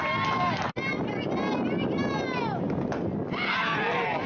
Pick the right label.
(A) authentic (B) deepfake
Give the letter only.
A